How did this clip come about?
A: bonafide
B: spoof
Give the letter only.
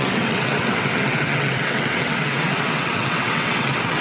B